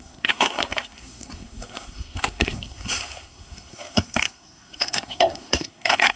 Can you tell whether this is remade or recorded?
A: remade